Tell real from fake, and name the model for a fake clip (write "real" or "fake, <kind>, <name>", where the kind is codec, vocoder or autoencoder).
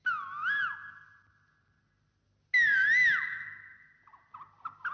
real